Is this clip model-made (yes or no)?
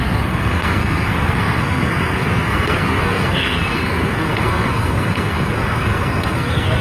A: yes